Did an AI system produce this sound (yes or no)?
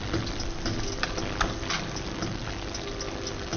no